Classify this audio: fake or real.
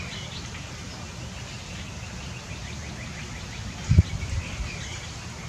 real